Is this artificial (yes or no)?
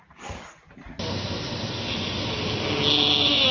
no